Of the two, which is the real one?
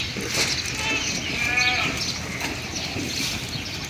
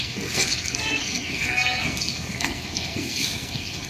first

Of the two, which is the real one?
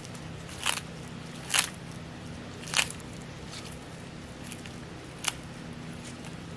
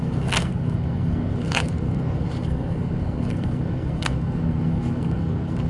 first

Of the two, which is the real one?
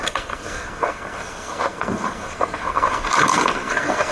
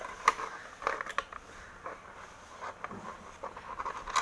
second